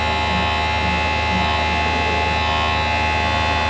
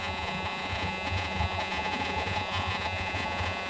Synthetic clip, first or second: second